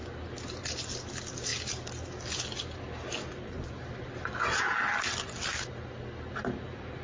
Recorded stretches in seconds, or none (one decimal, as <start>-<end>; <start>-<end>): 0.0-7.0